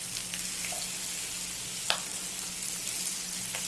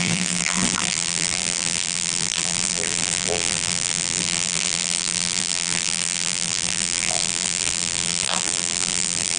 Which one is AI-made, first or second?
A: second